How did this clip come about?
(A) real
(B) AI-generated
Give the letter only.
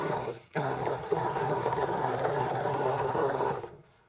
B